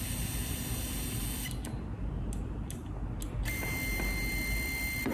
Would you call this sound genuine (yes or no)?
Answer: yes